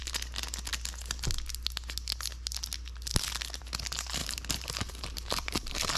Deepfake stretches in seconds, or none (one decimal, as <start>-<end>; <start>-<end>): 4.2-6.0

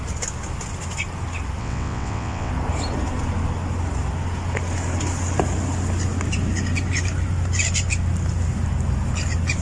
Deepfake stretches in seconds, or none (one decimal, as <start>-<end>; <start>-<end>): 1.6-2.5

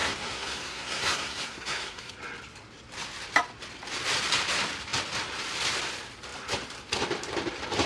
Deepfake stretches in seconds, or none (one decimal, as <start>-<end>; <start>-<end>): 0.0-2.2

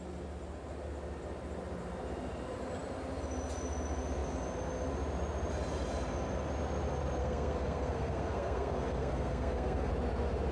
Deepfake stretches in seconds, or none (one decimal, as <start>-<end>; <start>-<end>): 7.2-9.9

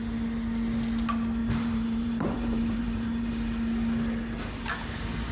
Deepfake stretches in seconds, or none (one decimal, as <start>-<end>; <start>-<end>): 1.4-3.3

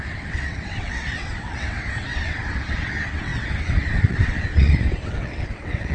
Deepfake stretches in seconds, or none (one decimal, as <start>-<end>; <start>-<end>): 0.0-5.9